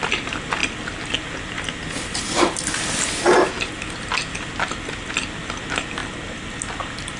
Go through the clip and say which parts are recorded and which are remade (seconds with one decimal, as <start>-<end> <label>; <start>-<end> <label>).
0.0-7.2 recorded